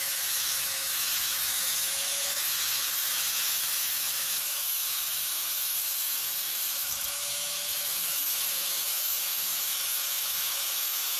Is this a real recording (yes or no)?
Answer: no